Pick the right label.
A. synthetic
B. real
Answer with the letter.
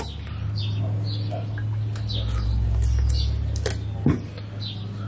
B